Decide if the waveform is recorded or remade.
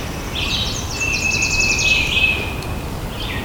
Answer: recorded